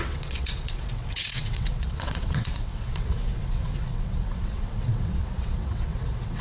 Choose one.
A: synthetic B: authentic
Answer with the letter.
A